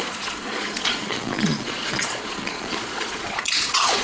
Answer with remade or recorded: remade